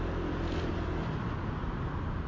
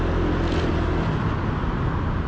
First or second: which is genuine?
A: second